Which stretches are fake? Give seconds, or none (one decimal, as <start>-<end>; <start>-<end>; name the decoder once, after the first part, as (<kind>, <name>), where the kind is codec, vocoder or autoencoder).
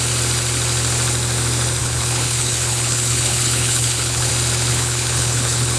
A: 1.8-4.3 (codec, HILCodec); 4.7-5.8